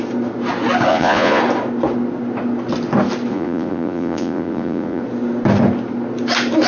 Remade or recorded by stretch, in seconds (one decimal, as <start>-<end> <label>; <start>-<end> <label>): 0.0-0.9 recorded; 0.9-1.4 remade; 1.4-3.3 recorded; 3.3-5.0 remade; 5.0-6.7 recorded